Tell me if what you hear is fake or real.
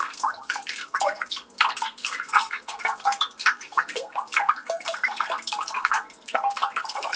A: fake